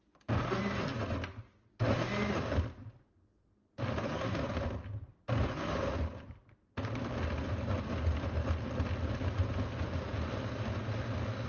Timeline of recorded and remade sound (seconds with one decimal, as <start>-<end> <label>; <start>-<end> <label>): 0.0-11.5 recorded

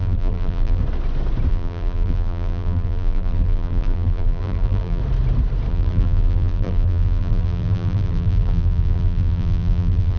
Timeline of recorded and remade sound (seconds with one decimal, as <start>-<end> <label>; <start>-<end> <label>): 0.0-0.8 remade; 0.8-1.5 recorded; 1.5-5.0 remade; 5.0-5.7 recorded; 5.7-10.2 remade

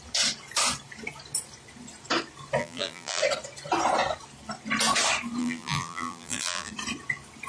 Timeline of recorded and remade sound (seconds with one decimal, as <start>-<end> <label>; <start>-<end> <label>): 0.0-2.6 recorded; 2.6-3.2 remade; 3.2-5.4 recorded; 5.4-6.7 remade; 6.7-7.5 recorded

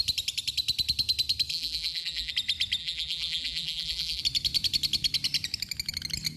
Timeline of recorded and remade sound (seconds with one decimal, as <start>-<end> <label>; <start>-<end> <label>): 0.0-1.5 recorded; 1.5-2.3 remade; 2.3-2.8 recorded; 2.8-4.2 remade; 4.2-6.4 recorded

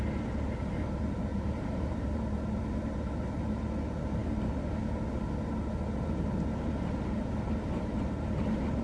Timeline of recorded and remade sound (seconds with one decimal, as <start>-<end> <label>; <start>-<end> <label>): 0.0-1.3 recorded; 1.3-2.6 remade; 2.6-8.8 recorded